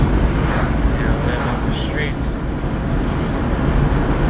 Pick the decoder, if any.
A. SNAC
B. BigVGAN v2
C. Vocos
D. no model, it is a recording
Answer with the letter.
D